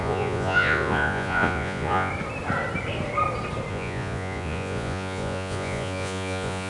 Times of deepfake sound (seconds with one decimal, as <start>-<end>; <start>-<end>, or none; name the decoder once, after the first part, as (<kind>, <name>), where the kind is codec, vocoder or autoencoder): 0.0-2.1 (vocoder, Vocos); 3.7-6.7